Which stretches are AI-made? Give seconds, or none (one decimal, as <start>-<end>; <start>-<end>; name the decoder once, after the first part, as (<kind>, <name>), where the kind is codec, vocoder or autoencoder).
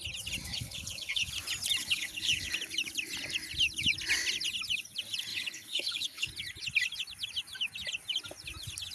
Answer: 0.5-1.3 (codec, HILCodec); 1.8-2.5; 5.3-6.3